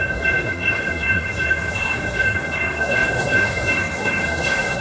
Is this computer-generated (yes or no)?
yes